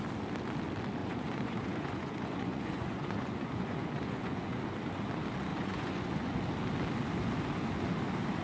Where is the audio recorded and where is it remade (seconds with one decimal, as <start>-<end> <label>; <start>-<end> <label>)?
0.0-1.0 recorded; 1.0-4.6 remade; 4.6-5.5 recorded; 5.5-6.4 remade; 6.4-8.4 recorded

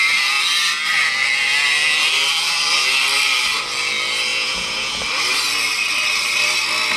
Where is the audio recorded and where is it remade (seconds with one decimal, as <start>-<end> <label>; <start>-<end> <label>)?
0.0-4.3 recorded; 4.3-5.0 remade; 5.0-7.0 recorded